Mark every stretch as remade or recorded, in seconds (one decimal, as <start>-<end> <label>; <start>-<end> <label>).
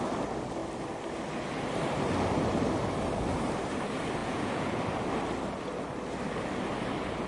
0.0-4.2 recorded; 4.2-4.8 remade; 4.8-7.3 recorded